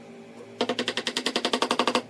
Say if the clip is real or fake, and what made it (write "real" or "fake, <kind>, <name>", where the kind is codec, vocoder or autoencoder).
real